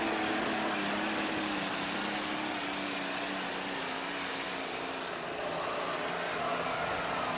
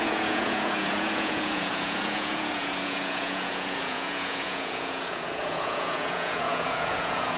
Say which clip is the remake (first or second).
second